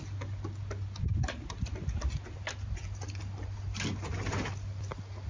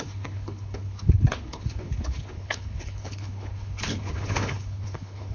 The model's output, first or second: second